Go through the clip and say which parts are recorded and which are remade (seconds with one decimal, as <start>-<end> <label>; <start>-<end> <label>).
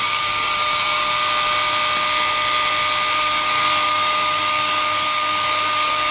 0.0-1.1 remade; 1.1-3.2 recorded; 3.2-6.1 remade